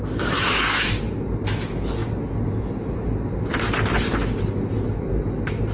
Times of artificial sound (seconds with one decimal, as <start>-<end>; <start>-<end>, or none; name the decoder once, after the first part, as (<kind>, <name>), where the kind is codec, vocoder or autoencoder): none